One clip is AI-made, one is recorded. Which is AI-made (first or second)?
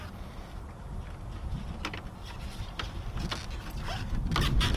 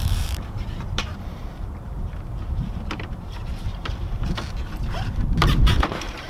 second